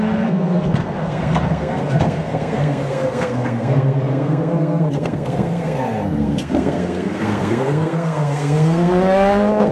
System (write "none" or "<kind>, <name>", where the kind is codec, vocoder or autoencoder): codec, SNAC